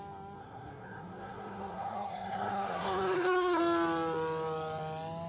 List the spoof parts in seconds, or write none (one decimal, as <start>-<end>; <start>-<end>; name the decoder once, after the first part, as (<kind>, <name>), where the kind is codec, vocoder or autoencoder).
0.4-3.6 (codec, SNAC)